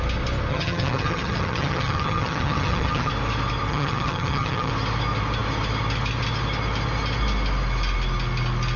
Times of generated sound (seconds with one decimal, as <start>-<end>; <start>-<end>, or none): 0.5-3.1; 3.7-4.7